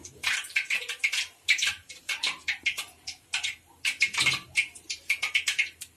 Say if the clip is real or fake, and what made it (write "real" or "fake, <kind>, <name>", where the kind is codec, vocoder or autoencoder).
fake, vocoder, BigVGAN v2